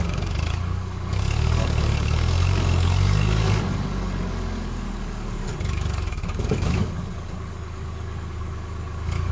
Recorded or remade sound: remade